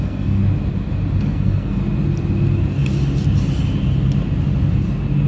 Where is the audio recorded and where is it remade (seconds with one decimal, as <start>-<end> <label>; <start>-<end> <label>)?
0.0-0.4 remade; 0.4-1.2 recorded; 1.2-1.8 remade; 1.8-5.3 recorded